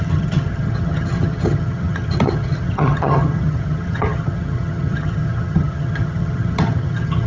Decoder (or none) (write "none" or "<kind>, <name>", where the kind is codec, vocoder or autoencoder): vocoder, HiFi-GAN